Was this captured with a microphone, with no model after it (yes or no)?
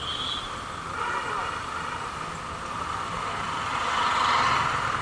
yes